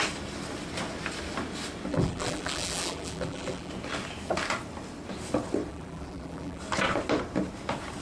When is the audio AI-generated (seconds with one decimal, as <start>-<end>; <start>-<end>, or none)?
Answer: 1.9-3.7; 5.7-6.6